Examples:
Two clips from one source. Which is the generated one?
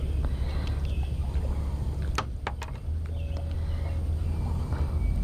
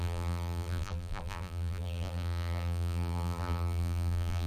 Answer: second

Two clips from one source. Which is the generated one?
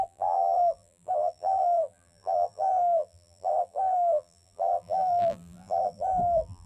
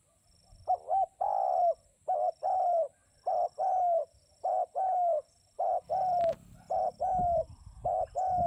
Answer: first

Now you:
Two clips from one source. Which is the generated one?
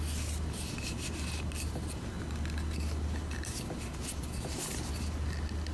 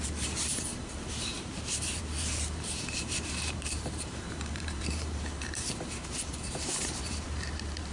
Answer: second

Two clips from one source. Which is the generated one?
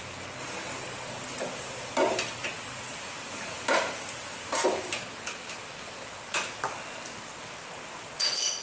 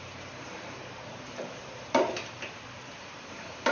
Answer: second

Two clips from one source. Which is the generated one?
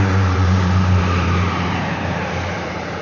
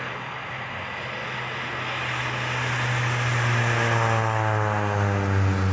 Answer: first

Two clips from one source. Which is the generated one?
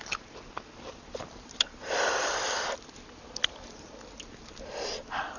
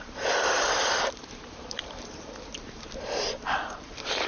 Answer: second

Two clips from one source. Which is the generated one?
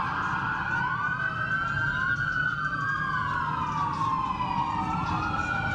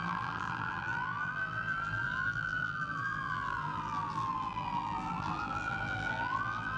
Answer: second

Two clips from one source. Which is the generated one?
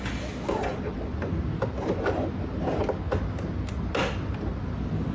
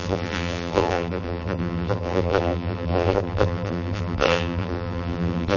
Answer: second